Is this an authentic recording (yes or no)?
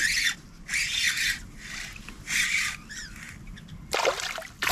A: yes